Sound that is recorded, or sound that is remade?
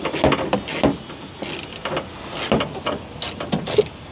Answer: recorded